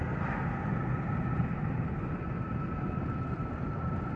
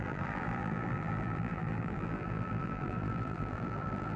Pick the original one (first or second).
first